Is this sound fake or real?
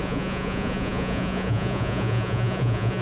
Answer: fake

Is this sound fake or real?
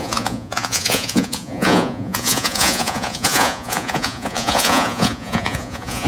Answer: fake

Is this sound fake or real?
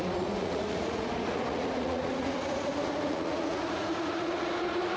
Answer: fake